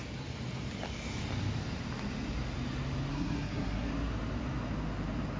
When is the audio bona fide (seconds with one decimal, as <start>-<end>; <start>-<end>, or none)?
0.0-3.1; 3.9-5.4